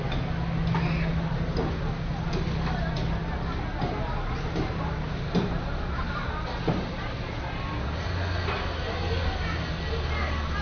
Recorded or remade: recorded